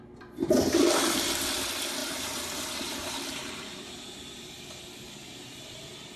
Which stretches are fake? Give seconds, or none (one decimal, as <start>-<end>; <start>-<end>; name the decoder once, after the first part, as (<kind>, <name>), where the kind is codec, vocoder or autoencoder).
2.0-4.5 (vocoder, BigVGAN v2); 5.2-5.7